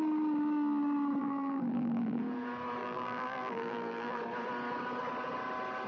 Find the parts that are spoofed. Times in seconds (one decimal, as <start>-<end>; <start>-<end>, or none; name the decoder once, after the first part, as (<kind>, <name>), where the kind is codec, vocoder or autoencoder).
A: 1.2-2.2 (vocoder, BigVGAN v2); 2.8-4.2